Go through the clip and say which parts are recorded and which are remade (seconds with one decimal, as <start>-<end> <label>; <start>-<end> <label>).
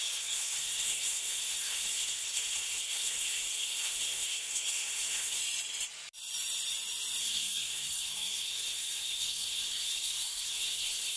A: 0.0-5.4 remade; 5.4-7.2 recorded; 7.2-11.2 remade